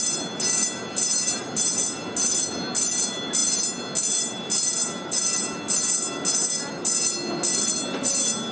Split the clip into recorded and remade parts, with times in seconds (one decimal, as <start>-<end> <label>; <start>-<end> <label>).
0.0-8.5 recorded